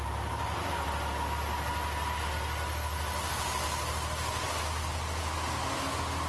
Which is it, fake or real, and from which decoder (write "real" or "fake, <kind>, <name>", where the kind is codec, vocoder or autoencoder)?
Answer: real